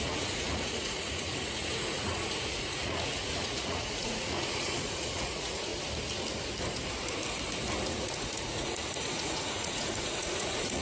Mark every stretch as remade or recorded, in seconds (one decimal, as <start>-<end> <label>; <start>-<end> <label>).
0.0-5.7 remade; 5.7-7.9 recorded; 7.9-10.8 remade

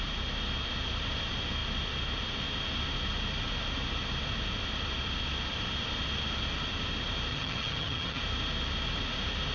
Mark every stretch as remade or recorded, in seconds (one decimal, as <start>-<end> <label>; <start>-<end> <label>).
0.0-7.3 recorded; 7.3-8.2 remade; 8.2-9.5 recorded

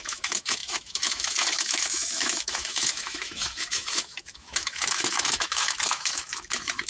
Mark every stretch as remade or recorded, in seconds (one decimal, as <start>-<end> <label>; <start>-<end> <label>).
0.0-6.9 remade

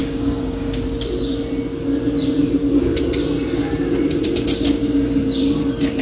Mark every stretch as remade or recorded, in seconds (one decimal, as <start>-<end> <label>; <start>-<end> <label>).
0.0-0.8 remade; 0.8-6.0 recorded

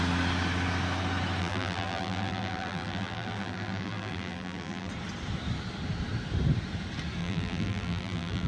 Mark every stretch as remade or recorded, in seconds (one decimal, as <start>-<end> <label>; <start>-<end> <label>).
0.0-1.4 recorded; 1.4-4.9 remade; 4.9-7.2 recorded; 7.2-8.5 remade